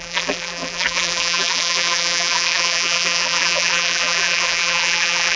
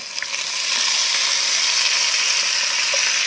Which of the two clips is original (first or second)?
second